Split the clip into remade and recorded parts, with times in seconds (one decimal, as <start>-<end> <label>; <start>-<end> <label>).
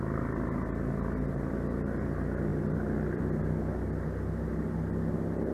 0.0-2.5 recorded; 2.5-3.2 remade; 3.2-5.5 recorded